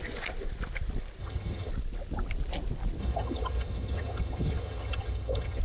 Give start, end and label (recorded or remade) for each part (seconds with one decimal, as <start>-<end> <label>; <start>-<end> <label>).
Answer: 0.0-1.2 recorded; 1.2-1.7 remade; 1.7-3.0 recorded; 3.0-5.6 remade